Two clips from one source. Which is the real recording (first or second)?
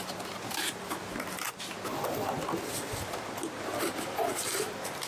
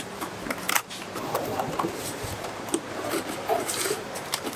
first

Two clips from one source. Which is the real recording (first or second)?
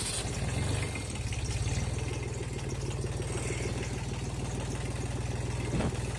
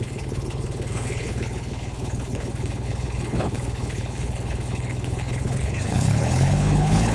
first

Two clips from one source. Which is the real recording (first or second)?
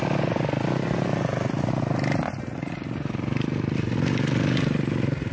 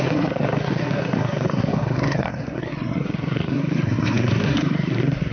first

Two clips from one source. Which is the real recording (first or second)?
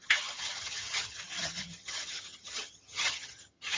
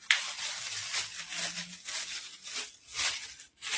second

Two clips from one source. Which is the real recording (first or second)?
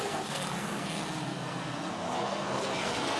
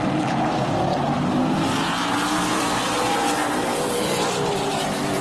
second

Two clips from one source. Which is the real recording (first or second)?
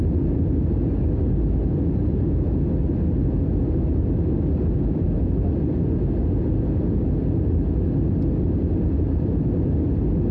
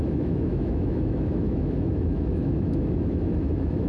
first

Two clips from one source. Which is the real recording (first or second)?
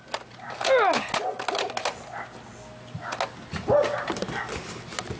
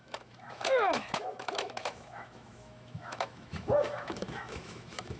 first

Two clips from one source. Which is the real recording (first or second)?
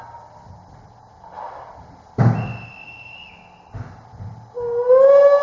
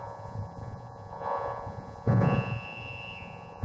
first